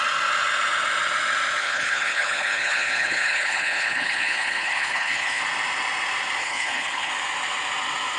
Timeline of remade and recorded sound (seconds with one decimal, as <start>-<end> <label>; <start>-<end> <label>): 0.0-1.6 recorded; 1.6-5.4 remade; 5.4-6.4 recorded; 6.4-7.1 remade; 7.1-8.2 recorded